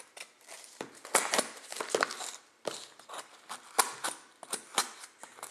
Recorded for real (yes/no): yes